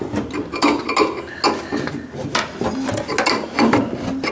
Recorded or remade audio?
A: recorded